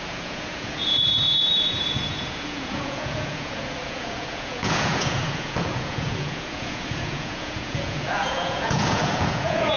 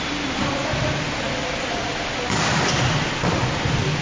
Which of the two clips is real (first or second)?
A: second